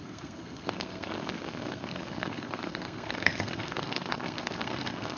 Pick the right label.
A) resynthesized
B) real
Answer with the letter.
A